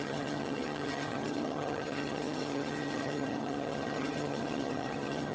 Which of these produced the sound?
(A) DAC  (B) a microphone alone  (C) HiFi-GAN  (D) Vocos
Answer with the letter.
C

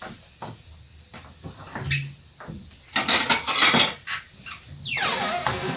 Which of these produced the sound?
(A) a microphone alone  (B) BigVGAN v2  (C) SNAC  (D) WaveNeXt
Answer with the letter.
A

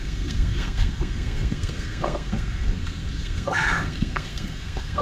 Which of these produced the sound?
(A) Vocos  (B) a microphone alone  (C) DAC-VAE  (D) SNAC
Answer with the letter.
D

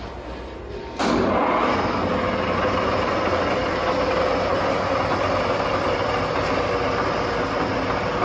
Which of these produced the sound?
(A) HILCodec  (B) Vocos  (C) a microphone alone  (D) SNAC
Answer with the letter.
C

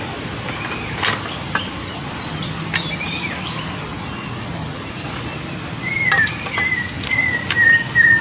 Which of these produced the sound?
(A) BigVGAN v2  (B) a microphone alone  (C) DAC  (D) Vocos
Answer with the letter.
B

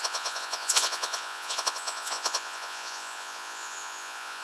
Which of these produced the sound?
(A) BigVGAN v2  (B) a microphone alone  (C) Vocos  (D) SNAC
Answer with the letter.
C